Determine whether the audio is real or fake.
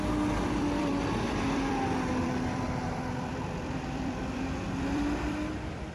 fake